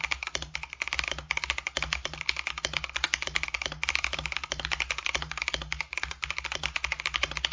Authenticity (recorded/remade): recorded